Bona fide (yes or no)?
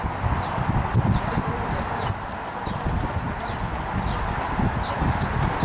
yes